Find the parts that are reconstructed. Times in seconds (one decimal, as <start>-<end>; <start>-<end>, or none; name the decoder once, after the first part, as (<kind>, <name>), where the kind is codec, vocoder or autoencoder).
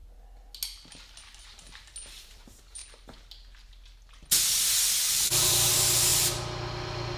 1.4-2.8 (vocoder, BigVGAN v2); 5.1-6.1